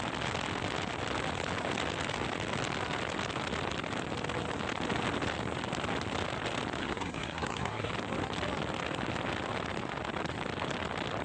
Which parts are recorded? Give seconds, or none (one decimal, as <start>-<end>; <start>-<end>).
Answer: 0.0-6.8; 7.9-11.2